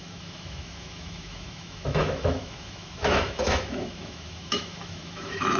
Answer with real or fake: fake